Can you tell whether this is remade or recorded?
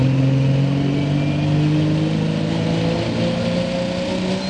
recorded